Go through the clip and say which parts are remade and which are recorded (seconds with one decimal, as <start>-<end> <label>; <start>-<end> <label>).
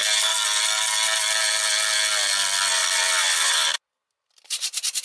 0.0-5.0 recorded